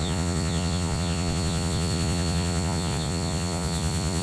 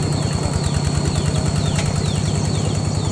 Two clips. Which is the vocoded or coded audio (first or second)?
first